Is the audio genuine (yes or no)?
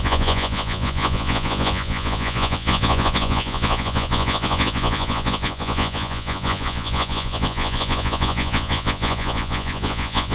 no